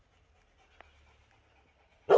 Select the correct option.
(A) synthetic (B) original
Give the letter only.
B